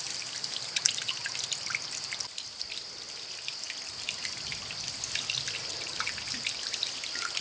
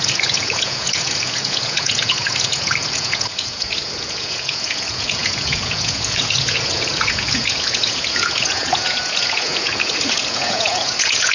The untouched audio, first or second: first